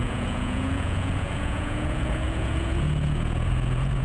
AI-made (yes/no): yes